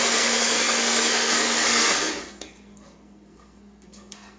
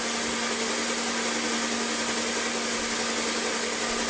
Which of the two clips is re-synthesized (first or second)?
first